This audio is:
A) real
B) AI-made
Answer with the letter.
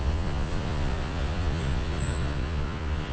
B